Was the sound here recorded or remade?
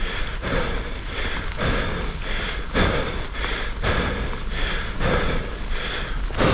recorded